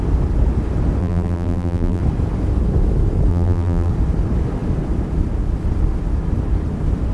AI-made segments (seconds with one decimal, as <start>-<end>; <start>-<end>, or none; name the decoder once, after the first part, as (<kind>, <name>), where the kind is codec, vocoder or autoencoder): 1.0-2.0 (vocoder, BigVGAN v2); 3.3-3.9